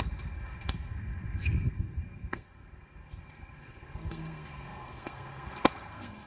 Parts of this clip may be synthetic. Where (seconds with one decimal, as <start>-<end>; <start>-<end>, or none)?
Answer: 0.0-6.3